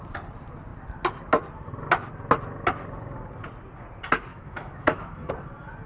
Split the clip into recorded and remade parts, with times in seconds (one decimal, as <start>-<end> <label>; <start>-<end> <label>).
0.0-4.3 recorded; 4.3-5.3 remade; 5.3-5.9 recorded